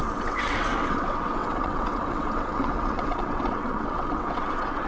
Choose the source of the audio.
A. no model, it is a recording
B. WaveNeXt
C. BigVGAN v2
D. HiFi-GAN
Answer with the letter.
B